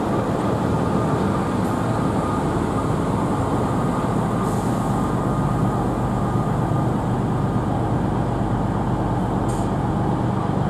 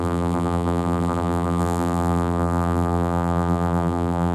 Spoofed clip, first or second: second